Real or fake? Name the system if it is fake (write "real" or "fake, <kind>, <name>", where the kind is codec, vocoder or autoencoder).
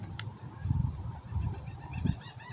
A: fake, vocoder, BigVGAN v2